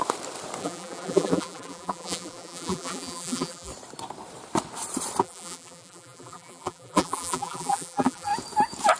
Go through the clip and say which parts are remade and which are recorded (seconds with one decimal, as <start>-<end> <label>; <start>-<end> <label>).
0.0-0.6 recorded; 0.6-3.7 remade; 3.7-5.2 recorded; 5.2-8.3 remade; 8.3-9.0 recorded